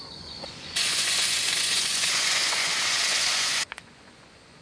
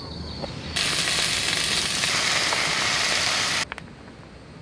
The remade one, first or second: first